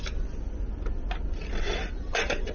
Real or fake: real